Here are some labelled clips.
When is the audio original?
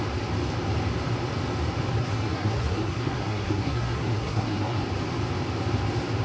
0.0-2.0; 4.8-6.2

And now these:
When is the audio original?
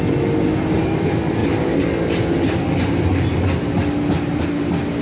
0.0-5.0